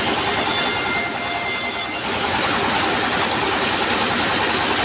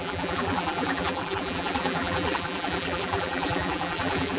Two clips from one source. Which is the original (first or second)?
first